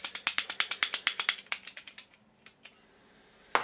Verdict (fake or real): real